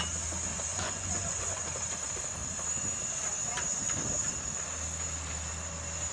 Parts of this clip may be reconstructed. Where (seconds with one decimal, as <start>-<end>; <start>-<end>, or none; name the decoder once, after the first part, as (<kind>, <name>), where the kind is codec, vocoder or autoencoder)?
0.7-1.6 (vocoder, Vocos)

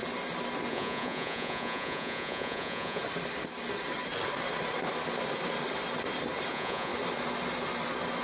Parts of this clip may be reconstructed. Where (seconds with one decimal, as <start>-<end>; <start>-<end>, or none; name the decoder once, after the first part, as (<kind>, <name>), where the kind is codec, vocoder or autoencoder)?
0.7-3.0 (vocoder, Vocos); 6.5-6.9

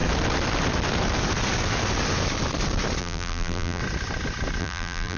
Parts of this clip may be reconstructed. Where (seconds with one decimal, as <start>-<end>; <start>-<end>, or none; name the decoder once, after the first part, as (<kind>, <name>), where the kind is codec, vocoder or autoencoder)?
3.0-3.8 (vocoder, BigVGAN v2); 4.6-5.2

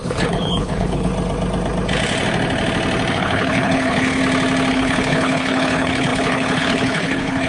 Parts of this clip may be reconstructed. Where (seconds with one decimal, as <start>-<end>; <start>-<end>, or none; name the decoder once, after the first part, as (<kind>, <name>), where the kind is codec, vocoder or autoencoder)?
0.0-1.1 (codec, HILCodec); 3.1-4.2; 4.7-7.5